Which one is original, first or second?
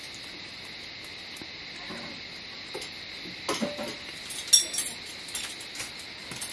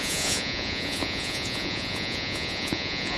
first